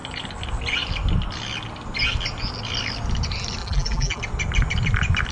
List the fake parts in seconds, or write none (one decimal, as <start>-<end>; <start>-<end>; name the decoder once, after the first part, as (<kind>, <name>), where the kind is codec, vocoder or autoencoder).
3.6-4.2 (vocoder, BigVGAN v2)